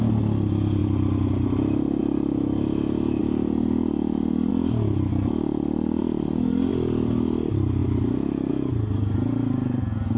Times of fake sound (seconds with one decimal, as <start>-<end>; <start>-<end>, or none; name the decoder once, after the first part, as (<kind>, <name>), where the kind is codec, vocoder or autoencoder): none